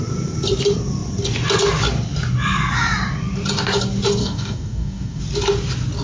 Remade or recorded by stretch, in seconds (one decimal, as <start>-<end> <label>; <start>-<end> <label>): 0.0-4.2 recorded; 4.2-5.2 remade; 5.2-6.0 recorded